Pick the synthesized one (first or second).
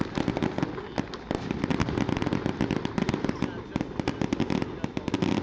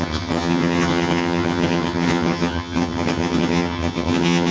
second